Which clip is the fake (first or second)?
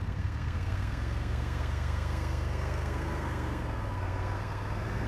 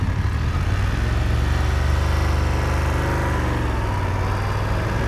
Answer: first